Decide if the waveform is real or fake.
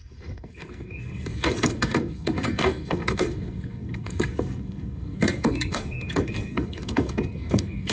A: fake